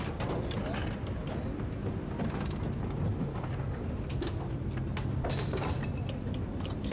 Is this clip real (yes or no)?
yes